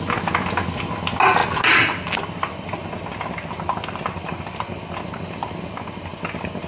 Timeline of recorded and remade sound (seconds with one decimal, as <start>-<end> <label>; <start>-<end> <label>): 0.0-6.7 recorded